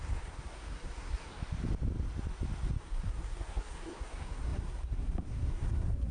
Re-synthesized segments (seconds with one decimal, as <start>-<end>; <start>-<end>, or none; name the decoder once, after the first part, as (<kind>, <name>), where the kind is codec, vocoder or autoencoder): 0.0-1.4 (codec, SNAC); 2.8-6.1